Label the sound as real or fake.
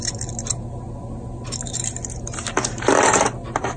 real